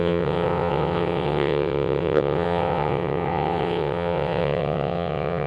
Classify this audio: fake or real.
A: fake